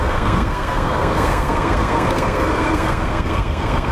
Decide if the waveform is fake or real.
fake